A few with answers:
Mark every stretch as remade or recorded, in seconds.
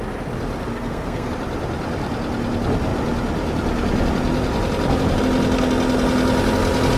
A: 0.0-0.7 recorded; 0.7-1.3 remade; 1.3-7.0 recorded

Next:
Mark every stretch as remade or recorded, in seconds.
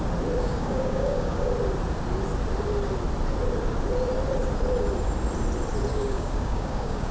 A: 0.0-0.4 recorded; 0.4-1.5 remade; 1.5-5.9 recorded; 5.9-7.1 remade